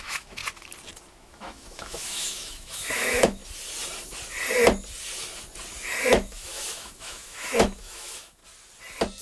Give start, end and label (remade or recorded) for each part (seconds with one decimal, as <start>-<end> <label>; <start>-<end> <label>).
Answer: 0.0-0.4 remade; 0.4-1.1 recorded; 1.1-3.4 remade; 3.4-6.1 recorded; 6.1-8.4 remade; 8.4-9.2 recorded